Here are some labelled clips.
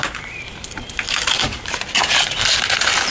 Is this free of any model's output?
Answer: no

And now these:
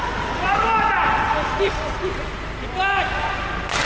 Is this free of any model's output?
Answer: yes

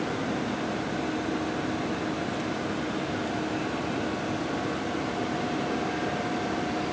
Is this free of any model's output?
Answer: yes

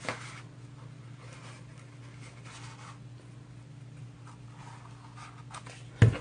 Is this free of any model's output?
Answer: yes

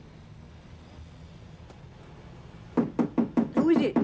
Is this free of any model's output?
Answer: yes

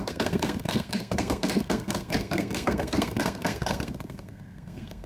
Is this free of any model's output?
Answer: no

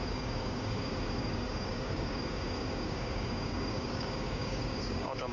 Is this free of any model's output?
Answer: no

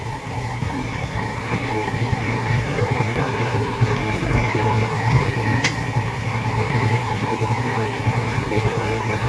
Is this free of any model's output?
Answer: no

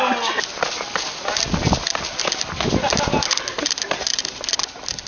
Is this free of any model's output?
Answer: yes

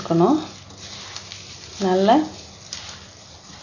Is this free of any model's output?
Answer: yes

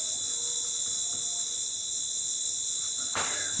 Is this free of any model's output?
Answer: yes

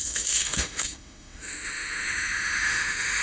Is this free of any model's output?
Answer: no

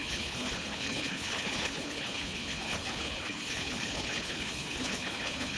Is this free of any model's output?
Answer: no